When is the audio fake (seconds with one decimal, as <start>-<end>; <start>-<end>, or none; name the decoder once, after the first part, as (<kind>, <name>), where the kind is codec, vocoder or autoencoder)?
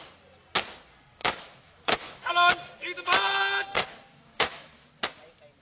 1.2-2.3 (autoencoder, DAC-VAE); 4.1-4.9